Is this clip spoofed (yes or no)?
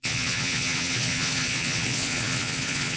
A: yes